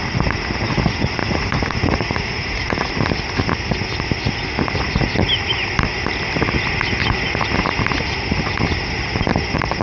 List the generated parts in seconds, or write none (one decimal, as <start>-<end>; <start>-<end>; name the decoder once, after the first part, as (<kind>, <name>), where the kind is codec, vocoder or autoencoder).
1.2-2.9 (vocoder, Vocos)